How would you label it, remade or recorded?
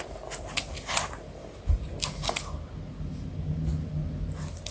recorded